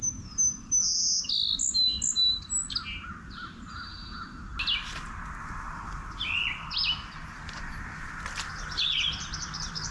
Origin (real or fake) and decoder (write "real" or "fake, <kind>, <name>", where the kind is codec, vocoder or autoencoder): real